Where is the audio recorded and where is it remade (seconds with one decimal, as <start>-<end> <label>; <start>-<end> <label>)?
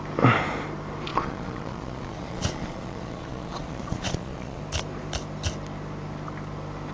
0.0-1.1 recorded; 1.1-4.6 remade; 4.6-6.9 recorded